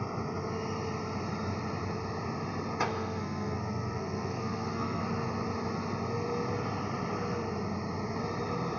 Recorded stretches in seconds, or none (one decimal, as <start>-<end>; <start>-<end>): 0.0-2.9; 5.0-8.8